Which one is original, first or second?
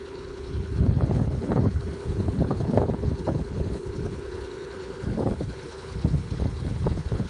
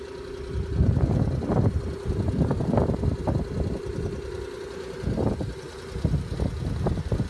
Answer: second